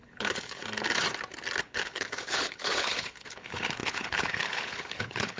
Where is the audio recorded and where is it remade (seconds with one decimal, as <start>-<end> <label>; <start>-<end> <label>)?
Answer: 0.0-0.6 remade; 0.6-1.6 recorded; 1.6-5.4 remade